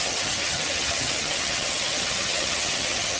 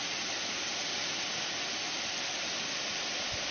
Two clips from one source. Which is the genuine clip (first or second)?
second